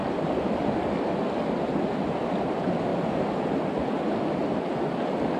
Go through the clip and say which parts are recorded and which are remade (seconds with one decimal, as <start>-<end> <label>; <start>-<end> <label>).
0.0-5.4 recorded